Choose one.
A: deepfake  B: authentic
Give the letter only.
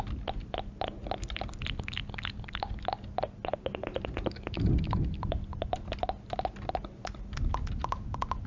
B